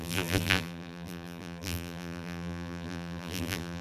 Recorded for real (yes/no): no